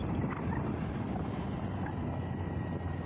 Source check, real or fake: real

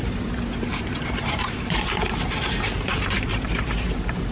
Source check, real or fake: fake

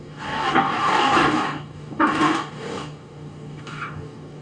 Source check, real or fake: fake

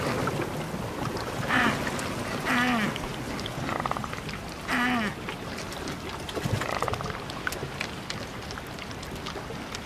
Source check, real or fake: real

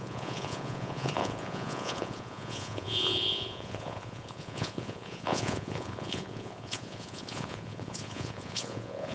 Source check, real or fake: fake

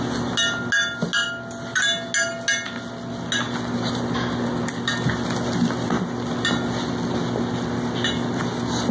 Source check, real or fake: real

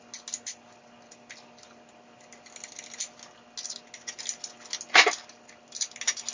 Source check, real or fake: real